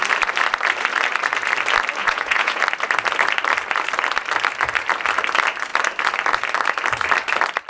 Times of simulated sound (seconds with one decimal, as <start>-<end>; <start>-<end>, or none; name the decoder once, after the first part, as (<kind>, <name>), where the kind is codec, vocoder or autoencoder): 2.0-2.6 (vocoder, Vocos)